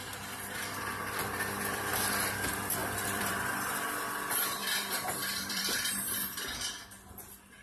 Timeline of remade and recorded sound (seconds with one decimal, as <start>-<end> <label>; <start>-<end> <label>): 0.0-1.0 recorded; 1.0-1.9 remade; 1.9-2.8 recorded; 2.8-3.3 remade; 3.3-4.6 recorded; 4.6-6.6 remade; 6.6-7.6 recorded